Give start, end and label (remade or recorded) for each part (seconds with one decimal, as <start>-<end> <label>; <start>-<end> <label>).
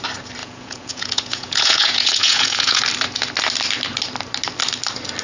0.0-0.4 recorded; 0.4-2.8 remade; 2.8-5.2 recorded